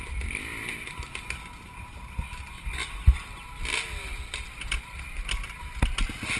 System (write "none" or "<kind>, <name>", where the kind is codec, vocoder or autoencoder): none